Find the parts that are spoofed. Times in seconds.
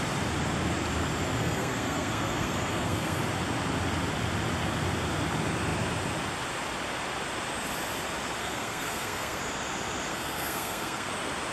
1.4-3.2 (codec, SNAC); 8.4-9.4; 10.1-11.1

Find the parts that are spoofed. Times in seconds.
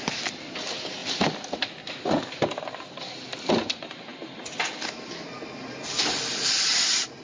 none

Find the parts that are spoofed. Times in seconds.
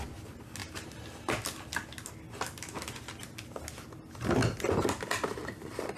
none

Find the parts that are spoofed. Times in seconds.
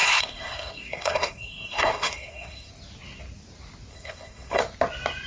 0.0-2.7 (codec, SNAC); 3.9-4.6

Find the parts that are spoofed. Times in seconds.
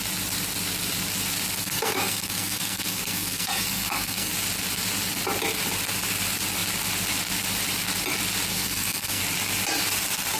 1.6-4.3 (codec, SNAC); 8.5-9.2